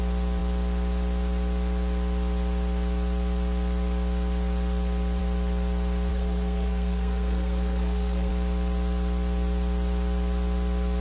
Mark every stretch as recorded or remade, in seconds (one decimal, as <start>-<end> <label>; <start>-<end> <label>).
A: 0.0-6.1 recorded; 6.1-8.3 remade; 8.3-11.0 recorded